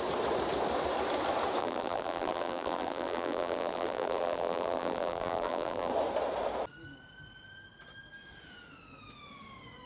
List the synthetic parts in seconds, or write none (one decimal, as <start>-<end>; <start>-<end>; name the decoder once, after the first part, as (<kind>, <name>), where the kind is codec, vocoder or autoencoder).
1.6-5.9 (vocoder, BigVGAN v2)